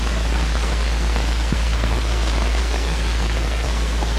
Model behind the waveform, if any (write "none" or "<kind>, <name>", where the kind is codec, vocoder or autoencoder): codec, SNAC